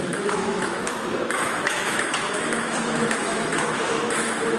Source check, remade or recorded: remade